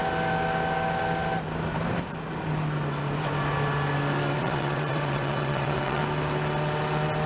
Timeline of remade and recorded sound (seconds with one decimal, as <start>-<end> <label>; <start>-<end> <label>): 0.0-4.4 recorded; 4.4-6.0 remade; 6.0-7.3 recorded